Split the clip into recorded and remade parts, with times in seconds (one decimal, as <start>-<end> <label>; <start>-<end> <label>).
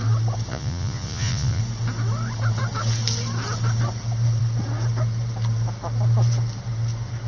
0.0-0.5 recorded; 0.5-1.6 remade; 1.6-7.3 recorded